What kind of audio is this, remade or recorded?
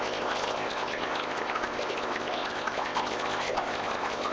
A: remade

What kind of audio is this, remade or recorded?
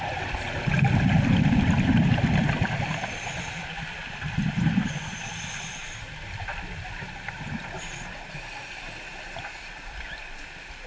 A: recorded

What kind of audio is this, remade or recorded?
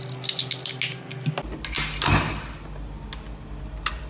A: recorded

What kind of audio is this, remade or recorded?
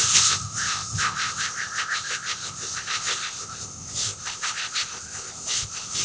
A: remade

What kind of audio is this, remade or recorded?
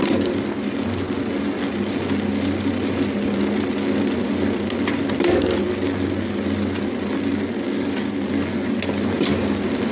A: recorded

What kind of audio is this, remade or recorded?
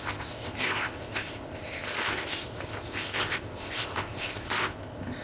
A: remade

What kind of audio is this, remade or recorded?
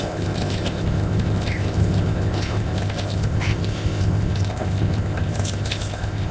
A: remade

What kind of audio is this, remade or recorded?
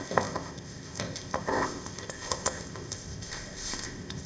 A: remade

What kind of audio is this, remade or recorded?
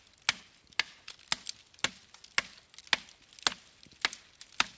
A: recorded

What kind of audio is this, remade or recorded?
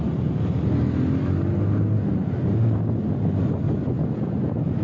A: recorded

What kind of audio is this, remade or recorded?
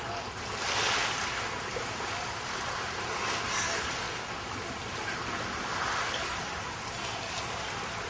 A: recorded